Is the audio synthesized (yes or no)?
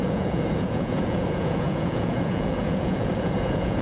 yes